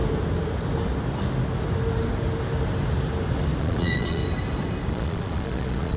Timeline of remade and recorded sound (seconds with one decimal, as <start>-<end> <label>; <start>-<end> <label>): 0.0-3.6 recorded; 3.6-4.2 remade; 4.2-4.9 recorded; 4.9-6.0 remade